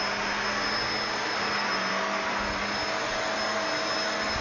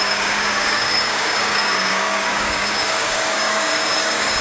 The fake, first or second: second